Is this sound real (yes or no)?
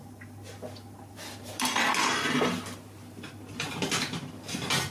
yes